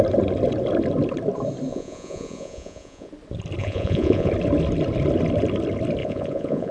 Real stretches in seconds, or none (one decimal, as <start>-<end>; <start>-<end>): 0.0-1.7; 3.1-3.6; 4.3-6.0